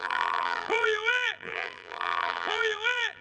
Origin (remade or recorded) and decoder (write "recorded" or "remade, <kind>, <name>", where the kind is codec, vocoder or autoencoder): remade, vocoder, BigVGAN v2